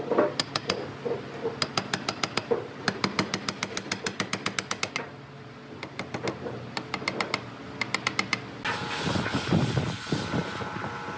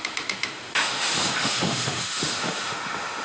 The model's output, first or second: second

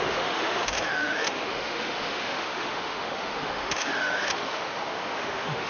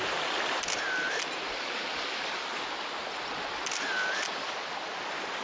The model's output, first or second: first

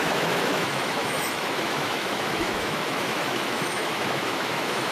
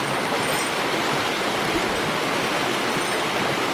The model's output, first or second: first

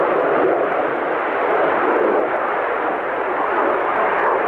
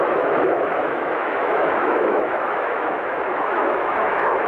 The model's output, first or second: second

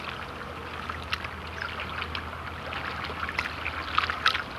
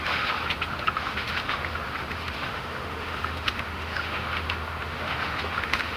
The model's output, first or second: second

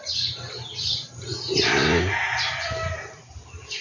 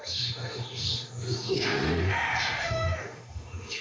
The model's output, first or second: second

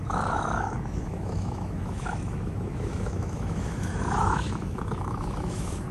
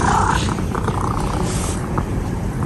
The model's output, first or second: first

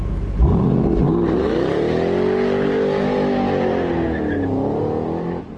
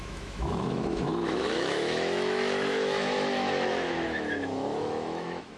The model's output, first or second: second